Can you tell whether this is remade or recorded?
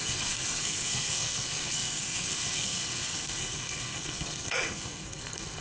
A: remade